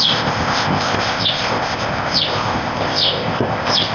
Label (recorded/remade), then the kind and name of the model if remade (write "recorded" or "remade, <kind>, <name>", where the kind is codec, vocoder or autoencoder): remade, codec, ZipCodec